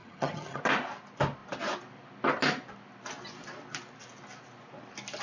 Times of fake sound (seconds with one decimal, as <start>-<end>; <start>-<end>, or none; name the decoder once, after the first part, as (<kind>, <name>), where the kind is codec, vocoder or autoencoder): 0.0-0.6 (vocoder, HiFi-GAN)